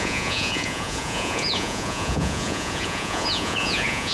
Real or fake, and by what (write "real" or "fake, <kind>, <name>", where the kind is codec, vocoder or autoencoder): fake, vocoder, Vocos